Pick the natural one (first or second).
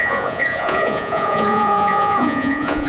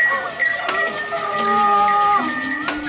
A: second